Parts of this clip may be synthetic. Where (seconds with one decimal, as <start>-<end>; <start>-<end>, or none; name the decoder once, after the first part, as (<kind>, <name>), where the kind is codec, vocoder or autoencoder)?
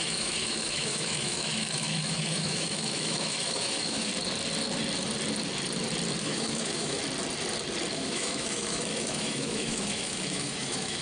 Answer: 0.0-4.1 (autoencoder, DAC-VAE); 6.2-7.0; 7.9-11.0